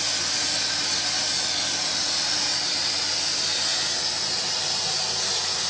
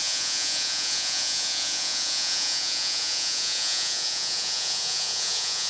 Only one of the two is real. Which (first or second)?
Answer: first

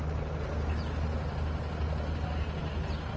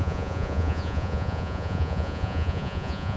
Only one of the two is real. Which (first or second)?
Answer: first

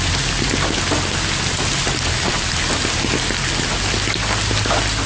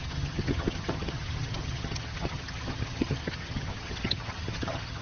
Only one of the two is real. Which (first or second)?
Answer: first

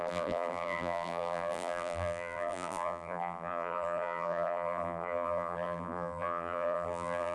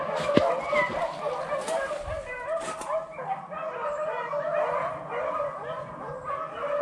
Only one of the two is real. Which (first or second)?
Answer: second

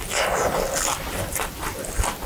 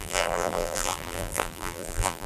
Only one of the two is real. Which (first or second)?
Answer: first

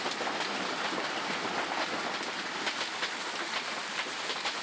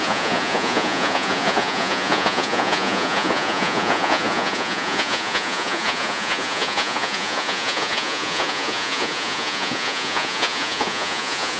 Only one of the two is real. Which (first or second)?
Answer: first